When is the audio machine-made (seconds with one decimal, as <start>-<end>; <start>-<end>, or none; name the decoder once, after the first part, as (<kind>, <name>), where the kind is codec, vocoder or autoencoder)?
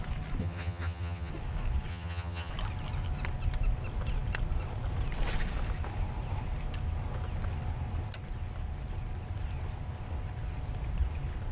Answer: 0.4-1.3 (vocoder, HiFi-GAN); 1.9-2.5